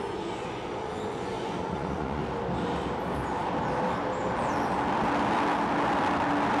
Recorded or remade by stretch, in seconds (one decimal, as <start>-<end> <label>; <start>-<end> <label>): 0.0-2.2 remade; 2.2-6.6 recorded